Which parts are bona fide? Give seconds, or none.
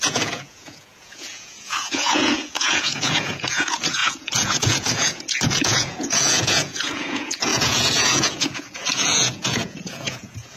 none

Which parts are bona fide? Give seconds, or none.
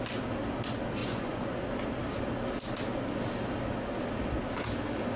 0.0-1.0; 1.6-5.2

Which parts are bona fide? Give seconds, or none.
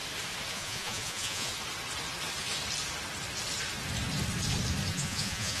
0.0-0.5; 1.5-4.9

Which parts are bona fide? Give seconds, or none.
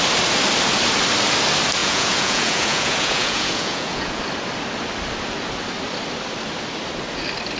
0.0-1.8; 4.2-7.6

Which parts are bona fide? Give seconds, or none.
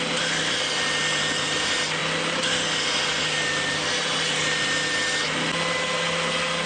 0.0-6.7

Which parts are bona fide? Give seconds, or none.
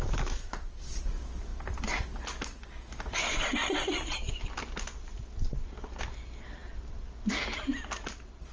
0.0-8.5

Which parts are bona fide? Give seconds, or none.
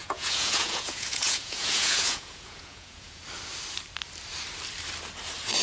3.2-5.6